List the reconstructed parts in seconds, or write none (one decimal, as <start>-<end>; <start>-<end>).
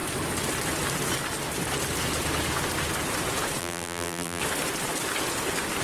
3.6-4.4